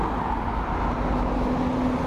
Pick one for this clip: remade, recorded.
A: recorded